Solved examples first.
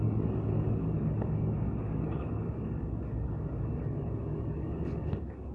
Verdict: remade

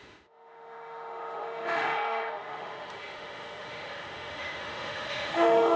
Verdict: remade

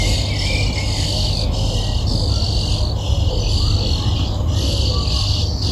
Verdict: recorded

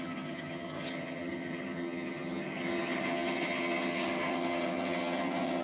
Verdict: remade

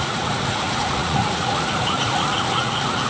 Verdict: remade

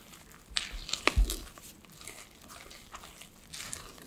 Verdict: recorded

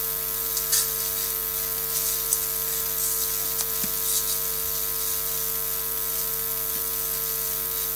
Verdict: recorded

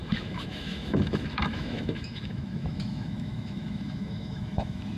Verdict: remade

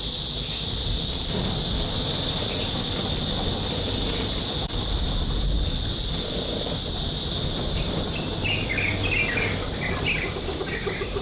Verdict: recorded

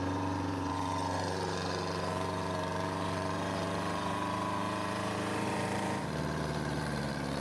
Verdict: remade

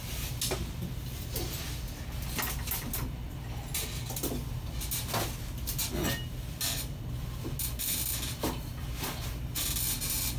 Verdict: recorded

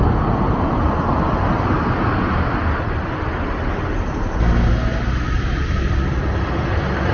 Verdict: recorded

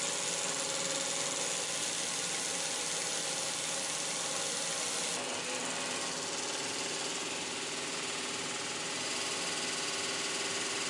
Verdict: recorded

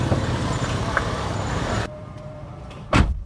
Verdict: remade